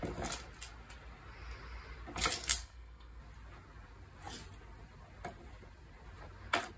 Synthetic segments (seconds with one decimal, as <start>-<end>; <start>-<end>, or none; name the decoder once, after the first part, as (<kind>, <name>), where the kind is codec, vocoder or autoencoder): 2.6-3.2 (codec, SNAC)